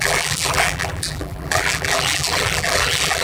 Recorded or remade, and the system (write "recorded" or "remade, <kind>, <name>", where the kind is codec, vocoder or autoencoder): remade, vocoder, BigVGAN v2